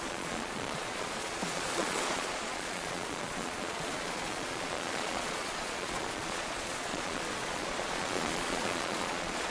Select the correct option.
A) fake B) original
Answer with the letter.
A